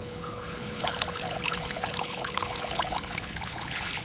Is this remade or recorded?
remade